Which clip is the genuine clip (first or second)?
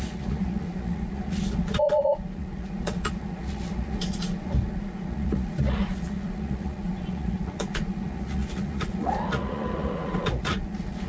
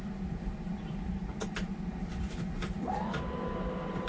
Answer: second